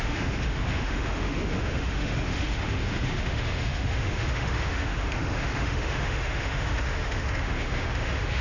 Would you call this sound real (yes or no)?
no